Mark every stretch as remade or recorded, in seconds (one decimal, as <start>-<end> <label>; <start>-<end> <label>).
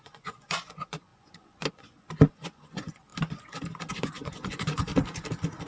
0.0-3.1 remade; 3.1-3.9 recorded; 3.9-4.9 remade; 4.9-5.7 recorded